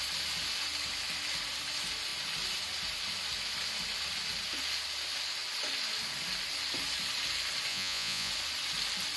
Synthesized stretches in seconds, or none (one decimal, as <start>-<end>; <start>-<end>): 7.7-8.3